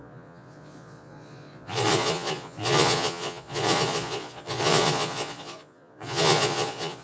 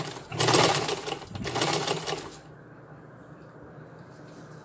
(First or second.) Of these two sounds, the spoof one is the first